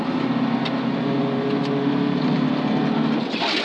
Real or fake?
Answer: real